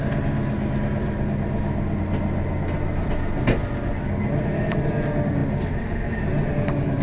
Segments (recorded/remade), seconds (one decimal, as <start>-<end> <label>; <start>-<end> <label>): 0.0-7.0 recorded